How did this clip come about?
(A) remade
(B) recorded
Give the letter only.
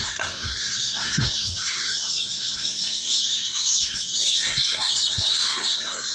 A